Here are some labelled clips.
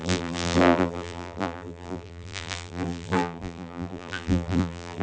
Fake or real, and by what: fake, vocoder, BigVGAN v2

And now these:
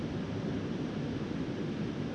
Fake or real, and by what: real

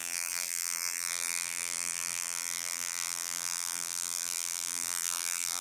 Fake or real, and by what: fake, vocoder, BigVGAN v2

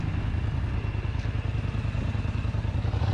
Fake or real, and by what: real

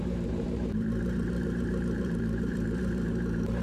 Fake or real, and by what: fake, vocoder, BigVGAN v2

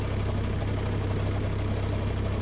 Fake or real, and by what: real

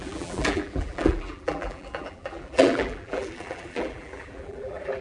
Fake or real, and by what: fake, vocoder, BigVGAN v2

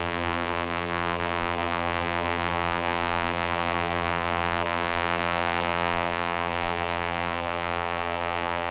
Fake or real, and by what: fake, vocoder, BigVGAN v2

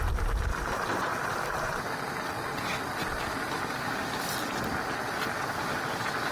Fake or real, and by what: real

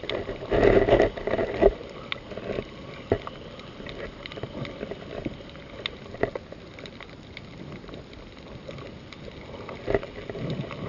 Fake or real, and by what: real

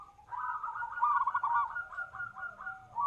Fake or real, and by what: real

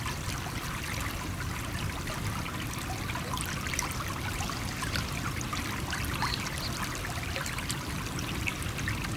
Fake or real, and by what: real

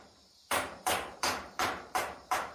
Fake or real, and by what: fake, vocoder, BigVGAN v2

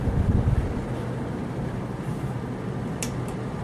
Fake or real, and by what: real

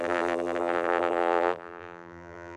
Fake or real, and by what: fake, vocoder, BigVGAN v2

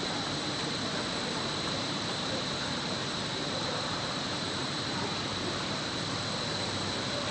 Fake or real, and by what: fake, vocoder, BigVGAN v2